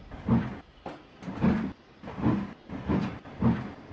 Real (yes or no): yes